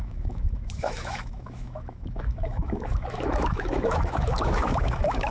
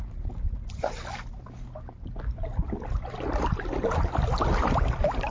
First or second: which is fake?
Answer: first